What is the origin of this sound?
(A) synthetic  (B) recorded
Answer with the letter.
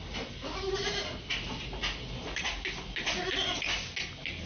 B